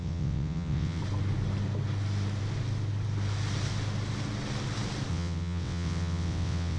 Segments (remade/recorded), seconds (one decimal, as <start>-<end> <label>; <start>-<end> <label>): 0.0-1.0 remade; 1.0-5.1 recorded; 5.1-6.8 remade